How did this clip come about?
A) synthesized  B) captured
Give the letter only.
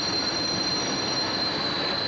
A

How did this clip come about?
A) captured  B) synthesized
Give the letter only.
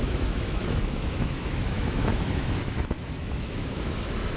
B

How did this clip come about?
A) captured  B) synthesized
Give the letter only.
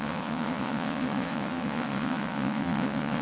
B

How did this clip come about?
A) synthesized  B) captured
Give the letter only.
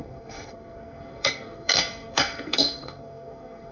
A